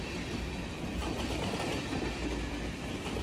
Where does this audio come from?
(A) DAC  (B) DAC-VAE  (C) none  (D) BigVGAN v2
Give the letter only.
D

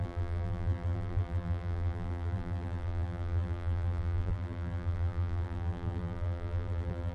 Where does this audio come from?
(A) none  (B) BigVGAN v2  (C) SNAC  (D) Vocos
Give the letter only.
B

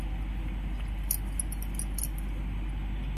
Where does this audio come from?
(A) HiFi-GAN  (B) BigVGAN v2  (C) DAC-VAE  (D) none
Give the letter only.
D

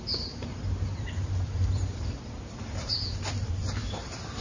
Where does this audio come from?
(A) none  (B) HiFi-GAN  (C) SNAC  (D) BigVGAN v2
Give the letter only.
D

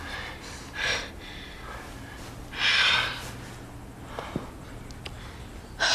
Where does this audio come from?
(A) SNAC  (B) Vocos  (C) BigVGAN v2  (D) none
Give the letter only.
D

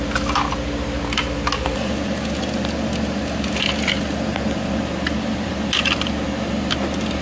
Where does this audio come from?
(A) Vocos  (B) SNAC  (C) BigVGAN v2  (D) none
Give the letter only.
D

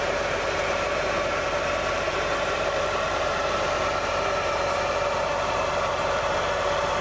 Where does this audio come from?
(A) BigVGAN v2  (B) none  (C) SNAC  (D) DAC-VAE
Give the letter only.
A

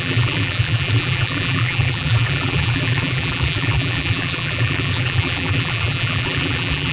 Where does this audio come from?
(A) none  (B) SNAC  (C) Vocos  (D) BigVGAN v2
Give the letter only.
D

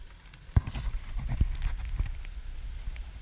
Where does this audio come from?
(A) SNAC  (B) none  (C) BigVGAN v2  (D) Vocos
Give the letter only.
B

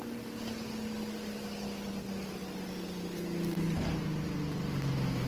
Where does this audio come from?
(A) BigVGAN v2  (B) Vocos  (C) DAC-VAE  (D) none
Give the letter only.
D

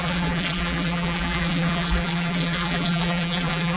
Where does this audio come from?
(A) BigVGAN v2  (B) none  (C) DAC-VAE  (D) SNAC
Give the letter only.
A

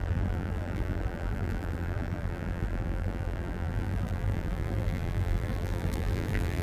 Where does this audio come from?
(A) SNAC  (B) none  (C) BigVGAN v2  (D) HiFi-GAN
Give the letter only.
C